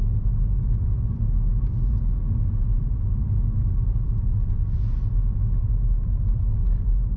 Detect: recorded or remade recorded